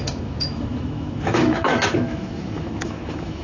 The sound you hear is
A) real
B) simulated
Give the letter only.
B